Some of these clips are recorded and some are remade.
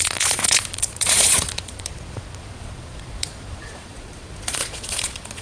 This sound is remade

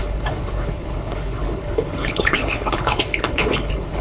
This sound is remade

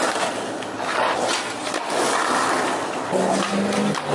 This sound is recorded